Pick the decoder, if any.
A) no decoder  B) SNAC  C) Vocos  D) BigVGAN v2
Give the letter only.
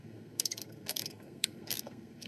B